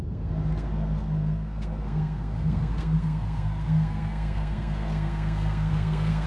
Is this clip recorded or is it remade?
remade